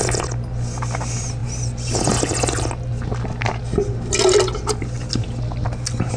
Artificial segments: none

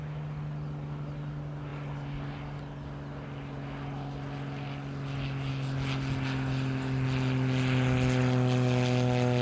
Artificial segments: none

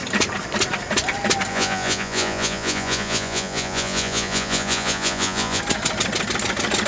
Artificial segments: 1.5-5.6 (vocoder, Vocos)

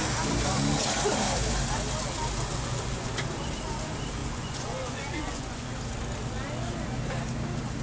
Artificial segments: 2.5-3.1 (vocoder, Vocos); 4.2-5.7

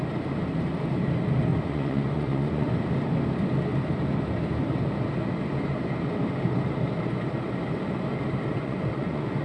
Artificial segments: 1.5-2.7 (vocoder, Vocos); 8.5-9.4

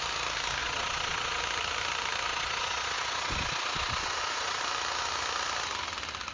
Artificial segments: 0.6-1.4 (vocoder, Vocos); 2.3-4.6